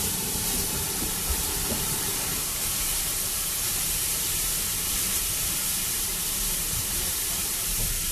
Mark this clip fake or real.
fake